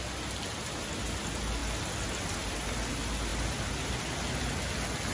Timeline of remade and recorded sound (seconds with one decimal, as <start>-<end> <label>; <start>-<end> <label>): 0.0-5.1 recorded